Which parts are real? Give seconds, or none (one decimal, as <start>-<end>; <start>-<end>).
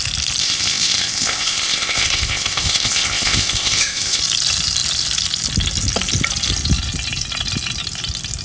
0.0-0.4; 4.2-8.4